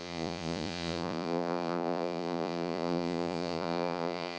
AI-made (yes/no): yes